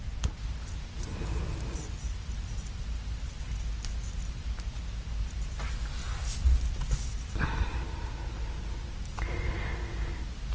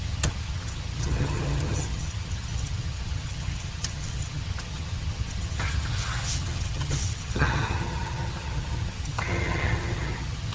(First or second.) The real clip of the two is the first